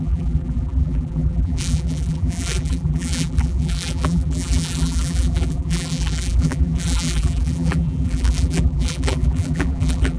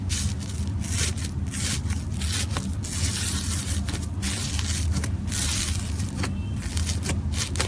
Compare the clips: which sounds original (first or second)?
second